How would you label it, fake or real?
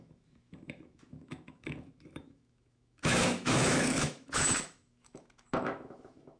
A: fake